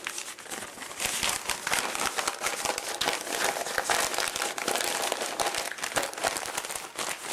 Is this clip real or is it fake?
real